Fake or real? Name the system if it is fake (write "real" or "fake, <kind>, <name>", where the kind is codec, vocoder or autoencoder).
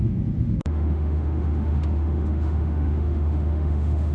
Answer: fake, autoencoder, DAC-VAE